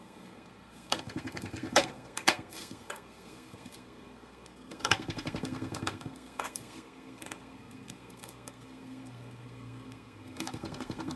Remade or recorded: remade